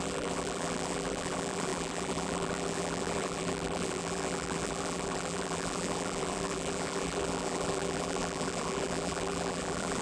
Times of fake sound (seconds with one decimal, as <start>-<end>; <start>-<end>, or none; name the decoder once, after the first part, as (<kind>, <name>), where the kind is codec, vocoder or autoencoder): 0.0-10.0 (vocoder, BigVGAN v2)